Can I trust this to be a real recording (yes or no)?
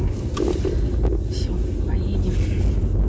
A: yes